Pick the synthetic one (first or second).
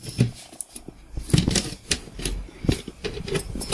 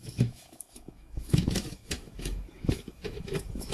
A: second